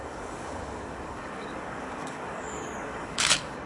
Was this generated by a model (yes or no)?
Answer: yes